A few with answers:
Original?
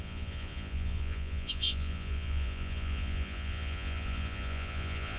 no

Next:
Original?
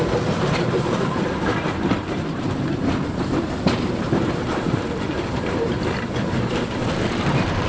no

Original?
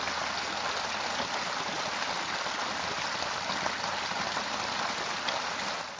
yes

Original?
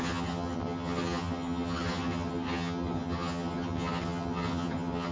no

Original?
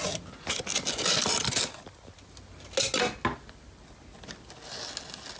yes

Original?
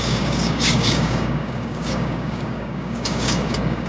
no